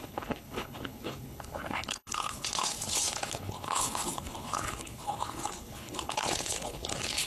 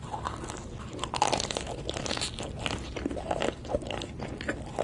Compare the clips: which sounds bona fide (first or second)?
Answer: second